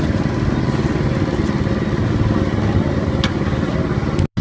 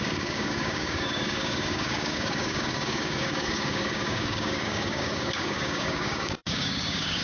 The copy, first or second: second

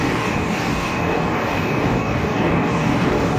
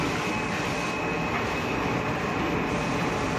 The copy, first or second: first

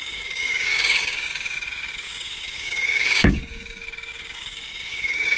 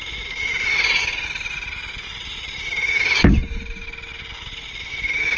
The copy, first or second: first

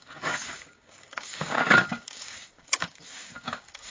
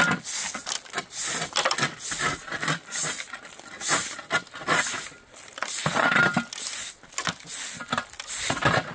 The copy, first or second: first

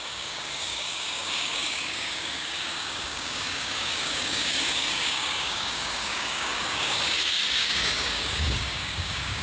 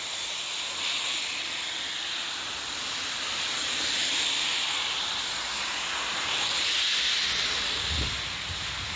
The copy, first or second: first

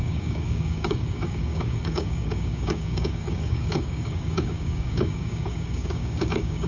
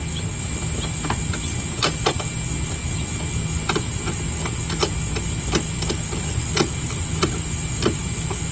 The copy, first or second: first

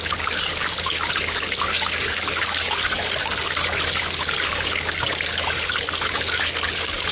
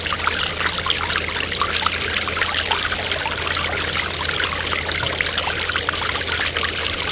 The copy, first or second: first